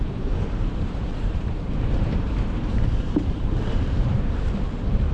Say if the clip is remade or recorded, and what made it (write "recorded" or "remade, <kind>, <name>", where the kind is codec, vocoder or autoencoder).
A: remade, vocoder, BigVGAN v2